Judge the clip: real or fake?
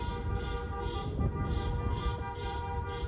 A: real